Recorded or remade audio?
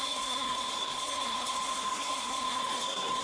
remade